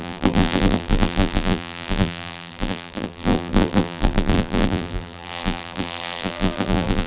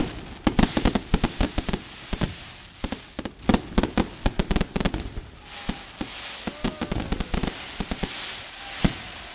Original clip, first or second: second